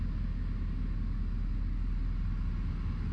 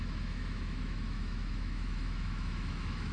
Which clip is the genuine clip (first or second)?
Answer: first